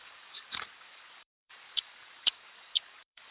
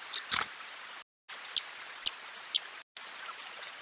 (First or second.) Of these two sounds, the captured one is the second